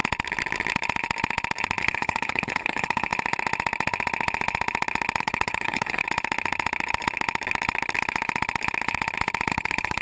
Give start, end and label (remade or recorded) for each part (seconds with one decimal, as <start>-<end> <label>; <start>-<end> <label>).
0.0-1.8 recorded; 1.8-3.1 remade; 3.1-5.2 recorded; 5.2-6.0 remade; 6.0-9.5 recorded; 9.5-10.0 remade

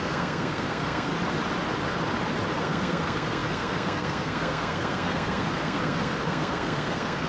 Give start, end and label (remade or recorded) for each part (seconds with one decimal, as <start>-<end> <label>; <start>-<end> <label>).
0.0-1.1 remade; 1.1-2.6 recorded; 2.6-7.3 remade

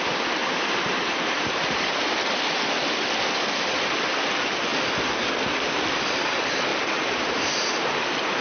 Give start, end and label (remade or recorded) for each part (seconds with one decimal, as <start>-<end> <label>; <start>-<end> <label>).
0.0-0.4 recorded; 0.4-2.2 remade; 2.2-6.7 recorded; 6.7-7.9 remade; 7.9-8.4 recorded

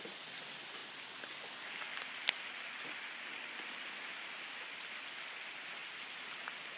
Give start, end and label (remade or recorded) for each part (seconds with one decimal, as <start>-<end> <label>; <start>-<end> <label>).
0.0-6.8 recorded

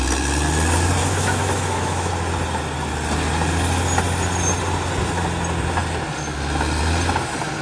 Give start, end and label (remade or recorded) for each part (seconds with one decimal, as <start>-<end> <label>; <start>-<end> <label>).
0.0-1.0 recorded; 1.0-2.1 remade; 2.1-7.6 recorded

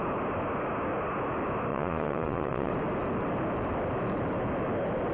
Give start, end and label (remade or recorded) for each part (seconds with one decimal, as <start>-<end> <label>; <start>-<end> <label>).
0.0-1.7 recorded; 1.7-2.7 remade; 2.7-5.1 recorded